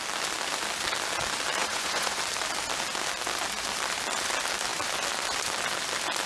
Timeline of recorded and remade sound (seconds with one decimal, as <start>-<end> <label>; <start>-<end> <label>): 0.0-1.6 recorded; 1.6-2.2 remade; 2.2-6.3 recorded